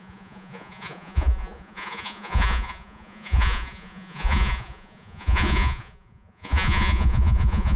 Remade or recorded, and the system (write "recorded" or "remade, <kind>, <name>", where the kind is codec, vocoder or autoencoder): remade, vocoder, Vocos